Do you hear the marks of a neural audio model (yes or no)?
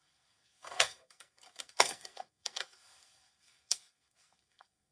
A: yes